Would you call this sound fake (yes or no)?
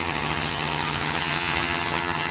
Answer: yes